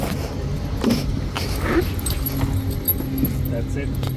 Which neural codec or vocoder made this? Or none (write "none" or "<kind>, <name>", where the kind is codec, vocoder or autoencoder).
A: none